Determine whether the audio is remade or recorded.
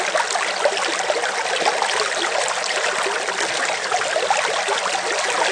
recorded